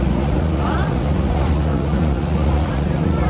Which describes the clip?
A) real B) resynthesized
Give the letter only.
B